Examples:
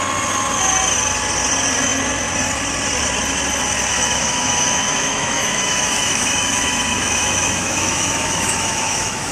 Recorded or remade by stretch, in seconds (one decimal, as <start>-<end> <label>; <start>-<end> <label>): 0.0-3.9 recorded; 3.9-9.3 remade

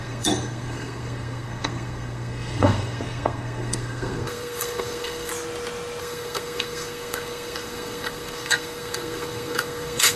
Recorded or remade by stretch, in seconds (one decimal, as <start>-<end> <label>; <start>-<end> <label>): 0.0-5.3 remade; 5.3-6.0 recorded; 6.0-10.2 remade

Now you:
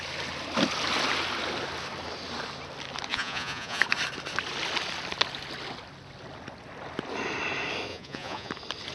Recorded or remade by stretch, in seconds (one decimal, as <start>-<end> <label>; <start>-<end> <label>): 0.0-3.1 recorded; 3.1-3.8 remade; 3.8-7.9 recorded; 7.9-8.5 remade; 8.5-8.9 recorded

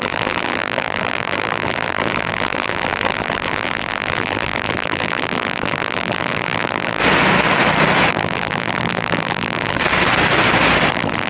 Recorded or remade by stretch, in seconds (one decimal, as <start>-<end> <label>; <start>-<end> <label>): 0.0-7.0 remade; 7.0-8.1 recorded; 8.1-9.8 remade; 9.8-10.9 recorded; 10.9-11.3 remade

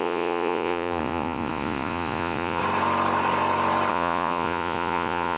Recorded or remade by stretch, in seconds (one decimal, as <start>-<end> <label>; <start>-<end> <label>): 0.0-2.6 remade; 2.6-3.9 recorded; 3.9-5.4 remade